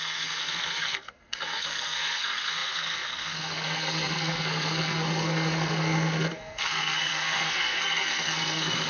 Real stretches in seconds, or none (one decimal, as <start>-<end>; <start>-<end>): none